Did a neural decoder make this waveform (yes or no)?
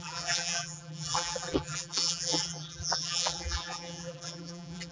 yes